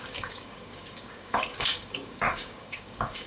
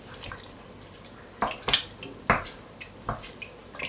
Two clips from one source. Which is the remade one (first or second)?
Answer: first